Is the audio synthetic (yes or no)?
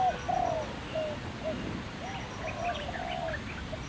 no